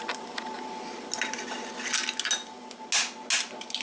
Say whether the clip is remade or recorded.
recorded